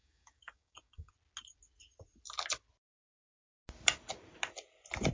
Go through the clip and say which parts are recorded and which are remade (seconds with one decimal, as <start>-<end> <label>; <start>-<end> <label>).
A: 0.0-1.1 remade; 1.1-5.1 recorded